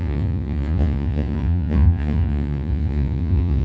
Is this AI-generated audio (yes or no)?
yes